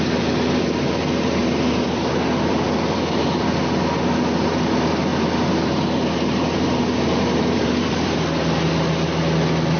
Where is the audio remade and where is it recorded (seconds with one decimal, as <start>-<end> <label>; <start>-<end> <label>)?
0.0-1.4 recorded; 1.4-3.6 remade; 3.6-5.1 recorded; 5.1-8.7 remade; 8.7-9.8 recorded